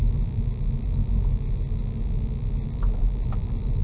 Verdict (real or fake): real